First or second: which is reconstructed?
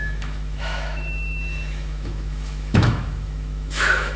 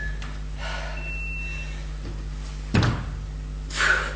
first